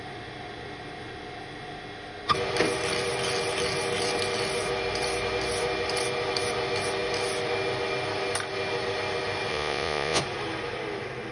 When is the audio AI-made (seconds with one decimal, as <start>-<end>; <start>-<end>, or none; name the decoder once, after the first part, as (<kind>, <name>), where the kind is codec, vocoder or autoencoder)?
9.5-10.2 (vocoder, Vocos)

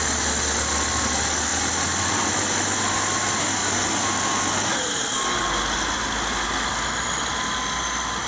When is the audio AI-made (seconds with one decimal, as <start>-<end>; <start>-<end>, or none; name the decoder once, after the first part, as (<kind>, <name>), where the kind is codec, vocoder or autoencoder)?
none

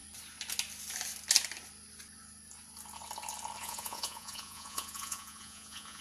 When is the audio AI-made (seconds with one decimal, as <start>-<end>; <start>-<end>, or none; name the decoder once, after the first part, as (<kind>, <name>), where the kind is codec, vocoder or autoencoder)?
3.6-6.0 (vocoder, Vocos)

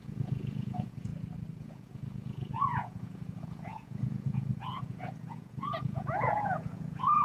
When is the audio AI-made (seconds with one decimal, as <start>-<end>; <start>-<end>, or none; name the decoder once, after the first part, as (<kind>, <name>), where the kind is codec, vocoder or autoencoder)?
0.0-1.1 (vocoder, Vocos); 1.6-7.2